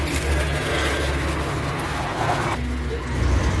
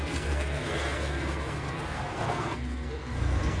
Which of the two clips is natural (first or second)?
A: first